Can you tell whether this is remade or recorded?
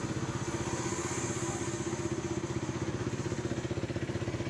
recorded